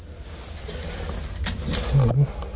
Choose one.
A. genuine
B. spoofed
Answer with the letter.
A